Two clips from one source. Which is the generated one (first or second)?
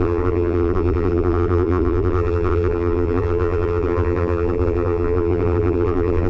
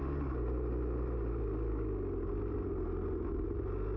first